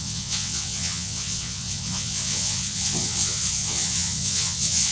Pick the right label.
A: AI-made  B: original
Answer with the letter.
A